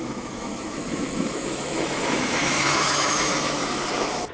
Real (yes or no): no